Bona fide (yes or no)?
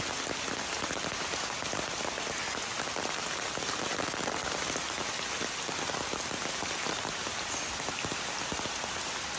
yes